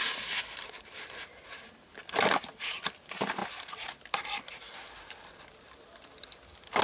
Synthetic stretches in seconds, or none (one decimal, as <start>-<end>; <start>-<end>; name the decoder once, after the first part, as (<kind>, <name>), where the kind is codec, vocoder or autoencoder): none